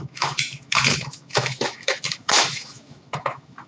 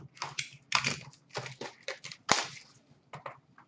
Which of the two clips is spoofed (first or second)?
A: first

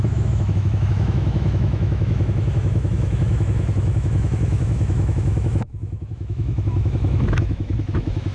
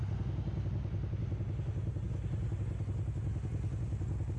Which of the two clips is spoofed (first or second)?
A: first